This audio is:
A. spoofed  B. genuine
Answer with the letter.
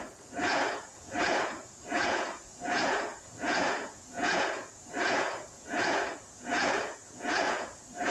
A